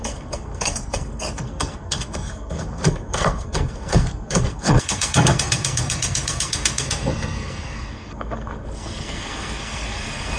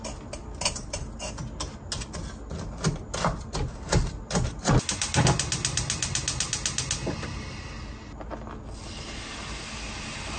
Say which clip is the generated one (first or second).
first